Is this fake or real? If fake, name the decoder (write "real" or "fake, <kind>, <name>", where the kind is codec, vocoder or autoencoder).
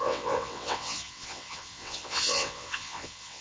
fake, vocoder, WaveNeXt